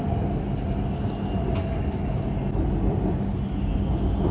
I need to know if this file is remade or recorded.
recorded